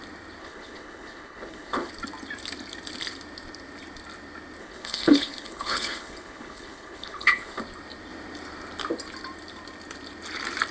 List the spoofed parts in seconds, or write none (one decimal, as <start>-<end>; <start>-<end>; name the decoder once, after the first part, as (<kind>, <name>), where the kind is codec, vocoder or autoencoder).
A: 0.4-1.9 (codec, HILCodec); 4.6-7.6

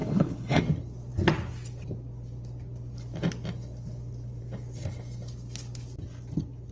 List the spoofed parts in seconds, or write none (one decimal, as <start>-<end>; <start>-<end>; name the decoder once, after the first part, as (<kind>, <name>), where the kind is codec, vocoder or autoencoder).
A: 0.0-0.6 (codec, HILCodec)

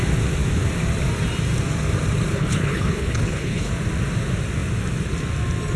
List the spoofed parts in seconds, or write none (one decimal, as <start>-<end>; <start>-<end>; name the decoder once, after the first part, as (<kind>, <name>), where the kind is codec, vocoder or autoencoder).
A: 2.3-3.7 (codec, HILCodec)

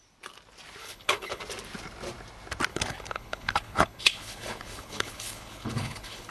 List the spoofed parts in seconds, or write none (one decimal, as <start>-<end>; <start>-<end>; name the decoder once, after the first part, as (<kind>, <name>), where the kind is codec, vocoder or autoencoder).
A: 0.8-1.4 (codec, HILCodec); 2.7-6.3

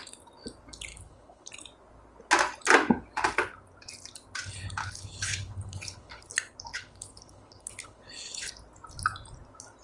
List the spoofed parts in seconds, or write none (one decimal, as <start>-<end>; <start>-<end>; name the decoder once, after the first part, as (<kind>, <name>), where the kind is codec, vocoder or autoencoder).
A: 0.9-1.5 (codec, HILCodec); 4.8-6.3; 6.7-8.5

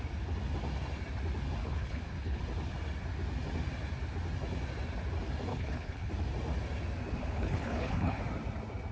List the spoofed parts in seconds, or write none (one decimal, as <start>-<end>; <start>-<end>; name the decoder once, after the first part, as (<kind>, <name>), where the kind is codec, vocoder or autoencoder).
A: 1.6-2.4 (codec, HILCodec); 5.5-6.1; 7.2-8.2